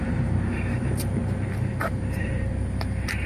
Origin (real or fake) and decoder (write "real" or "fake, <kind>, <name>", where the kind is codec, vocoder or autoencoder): fake, vocoder, BigVGAN v2